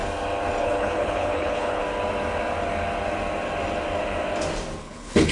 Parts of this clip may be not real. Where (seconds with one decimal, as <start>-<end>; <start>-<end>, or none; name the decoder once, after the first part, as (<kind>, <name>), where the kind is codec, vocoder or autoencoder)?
0.6-1.8 (codec, HILCodec); 4.8-5.3